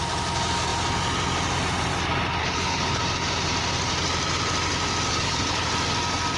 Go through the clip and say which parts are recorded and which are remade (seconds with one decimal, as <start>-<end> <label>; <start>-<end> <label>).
0.0-2.4 recorded; 2.4-3.0 remade; 3.0-5.1 recorded; 5.1-5.7 remade; 5.7-6.4 recorded